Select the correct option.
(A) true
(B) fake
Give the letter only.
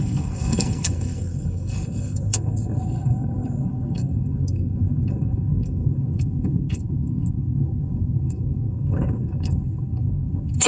B